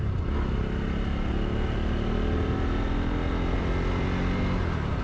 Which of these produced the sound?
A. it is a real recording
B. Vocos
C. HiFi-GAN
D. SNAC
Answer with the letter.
A